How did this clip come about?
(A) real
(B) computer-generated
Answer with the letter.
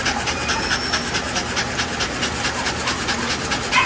A